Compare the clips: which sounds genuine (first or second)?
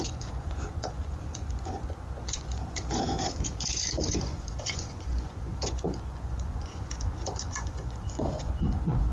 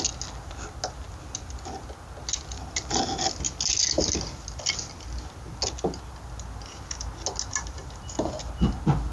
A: second